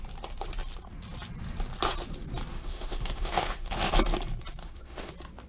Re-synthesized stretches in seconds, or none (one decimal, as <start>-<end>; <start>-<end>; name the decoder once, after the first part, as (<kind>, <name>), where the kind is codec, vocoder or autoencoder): 2.5-3.9 (autoencoder, DAC-VAE); 4.6-5.1